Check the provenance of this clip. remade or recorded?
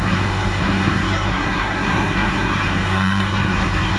remade